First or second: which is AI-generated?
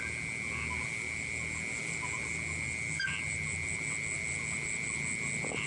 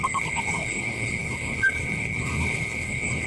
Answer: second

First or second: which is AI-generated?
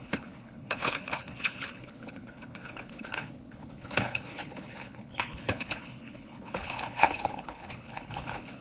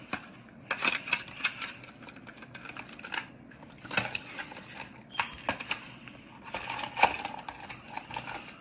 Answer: first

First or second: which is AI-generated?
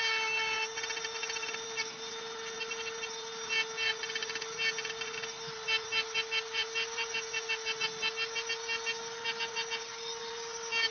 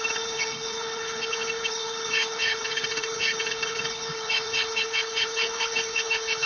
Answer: second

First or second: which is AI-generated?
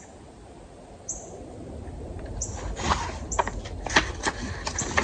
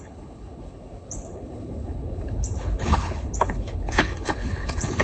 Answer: second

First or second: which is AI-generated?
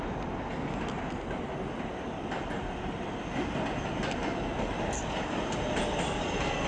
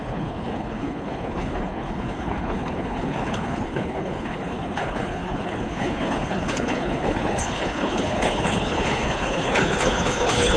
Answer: second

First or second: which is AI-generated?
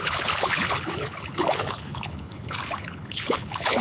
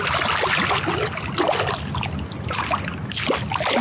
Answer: first